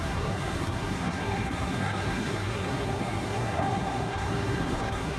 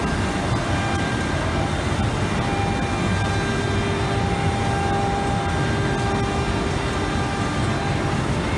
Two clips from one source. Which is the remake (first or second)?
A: first